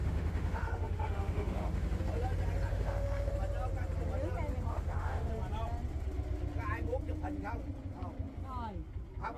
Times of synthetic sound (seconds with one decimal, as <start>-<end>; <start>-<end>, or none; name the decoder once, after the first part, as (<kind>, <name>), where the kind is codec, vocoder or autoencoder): 0.0-2.0 (autoencoder, DAC-VAE); 2.7-3.3; 4.7-5.3